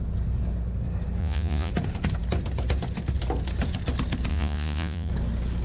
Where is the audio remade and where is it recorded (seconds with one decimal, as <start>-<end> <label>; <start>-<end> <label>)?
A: 0.0-1.2 recorded; 1.2-1.7 remade; 1.7-4.3 recorded; 4.3-5.1 remade; 5.1-5.6 recorded